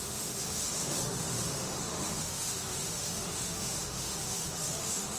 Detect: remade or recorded remade